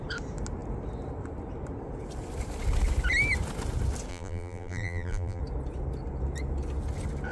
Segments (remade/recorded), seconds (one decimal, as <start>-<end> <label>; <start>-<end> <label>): 0.0-4.1 recorded; 4.1-5.4 remade; 5.4-7.3 recorded